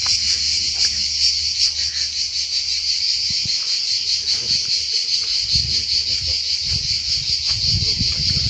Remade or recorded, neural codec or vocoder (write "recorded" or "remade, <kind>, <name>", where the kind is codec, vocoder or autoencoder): recorded